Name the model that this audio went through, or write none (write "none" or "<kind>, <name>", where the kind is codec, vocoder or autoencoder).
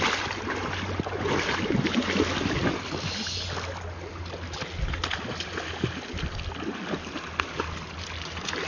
none